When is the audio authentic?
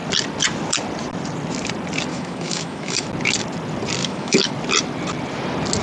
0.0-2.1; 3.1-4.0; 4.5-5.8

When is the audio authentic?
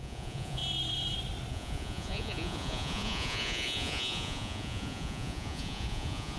0.6-1.5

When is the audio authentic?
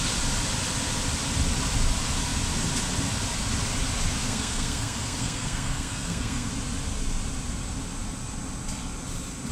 0.0-4.2; 6.5-9.5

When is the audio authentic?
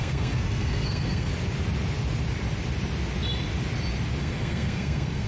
1.3-4.2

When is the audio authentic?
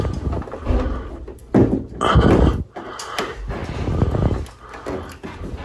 0.0-5.6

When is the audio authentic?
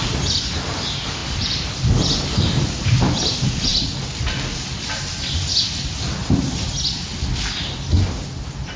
0.0-8.8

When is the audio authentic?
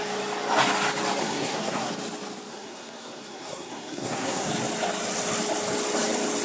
0.0-1.2; 1.9-2.5; 4.5-6.4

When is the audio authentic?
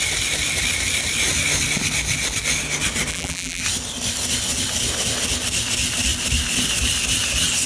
0.0-3.1; 3.6-7.7